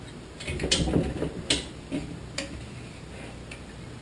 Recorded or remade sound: recorded